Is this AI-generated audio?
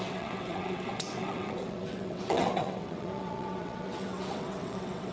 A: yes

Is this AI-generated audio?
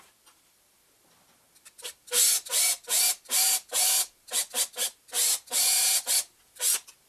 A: yes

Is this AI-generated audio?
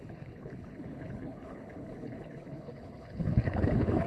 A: yes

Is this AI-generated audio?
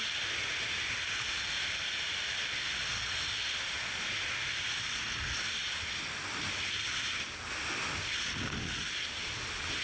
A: no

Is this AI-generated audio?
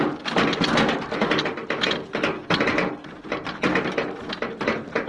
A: no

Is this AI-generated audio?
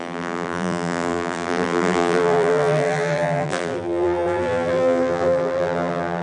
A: yes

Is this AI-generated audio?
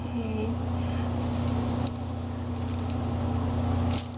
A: no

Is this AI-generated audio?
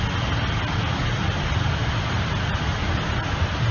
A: no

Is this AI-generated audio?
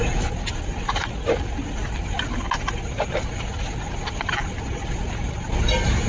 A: no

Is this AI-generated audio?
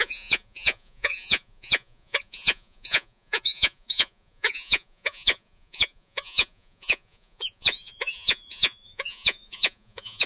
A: yes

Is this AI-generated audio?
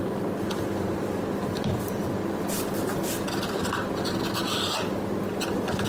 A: no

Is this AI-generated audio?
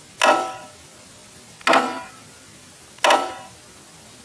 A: no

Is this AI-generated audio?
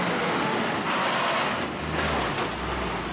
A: no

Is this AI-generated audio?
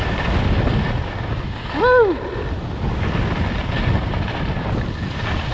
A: no